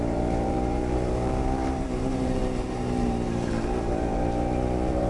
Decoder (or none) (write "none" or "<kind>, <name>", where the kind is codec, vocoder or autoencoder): vocoder, BigVGAN v2